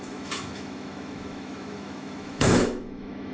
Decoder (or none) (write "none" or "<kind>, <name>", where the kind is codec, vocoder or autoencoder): autoencoder, DAC-VAE